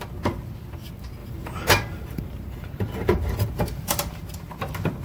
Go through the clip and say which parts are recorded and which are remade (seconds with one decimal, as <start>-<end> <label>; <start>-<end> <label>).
0.0-1.2 recorded; 1.2-4.2 remade; 4.2-5.0 recorded